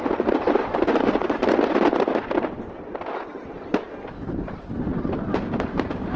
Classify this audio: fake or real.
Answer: real